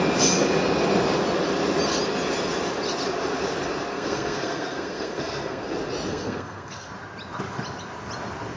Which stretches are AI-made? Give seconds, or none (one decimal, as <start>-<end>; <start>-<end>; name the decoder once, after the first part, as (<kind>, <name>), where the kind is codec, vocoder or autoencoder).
3.9-5.6 (codec, SNAC); 6.1-6.9

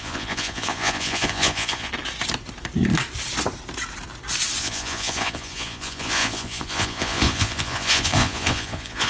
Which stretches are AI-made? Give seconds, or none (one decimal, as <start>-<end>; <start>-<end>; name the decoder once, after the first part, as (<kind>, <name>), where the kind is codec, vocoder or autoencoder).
0.0-1.9 (vocoder, Vocos); 4.6-9.1

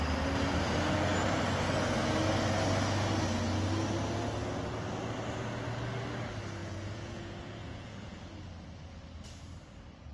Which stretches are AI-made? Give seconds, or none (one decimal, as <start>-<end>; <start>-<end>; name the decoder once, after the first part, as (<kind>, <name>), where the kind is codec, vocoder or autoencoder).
6.6-8.2 (vocoder, Vocos)